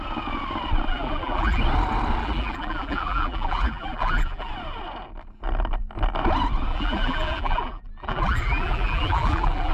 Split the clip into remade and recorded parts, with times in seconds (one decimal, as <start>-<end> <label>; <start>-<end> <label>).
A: 0.0-0.9 recorded; 0.9-1.6 remade; 1.6-2.2 recorded; 2.2-4.5 remade; 4.5-6.7 recorded; 6.7-9.7 remade